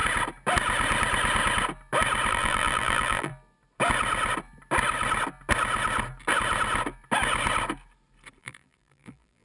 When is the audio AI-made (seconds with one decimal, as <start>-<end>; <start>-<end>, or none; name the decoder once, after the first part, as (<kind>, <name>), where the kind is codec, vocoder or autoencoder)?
2.3-3.3 (vocoder, BigVGAN v2); 8.4-9.4